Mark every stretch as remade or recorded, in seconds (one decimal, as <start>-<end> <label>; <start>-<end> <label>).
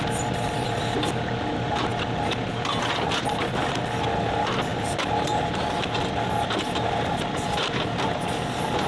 0.0-8.9 recorded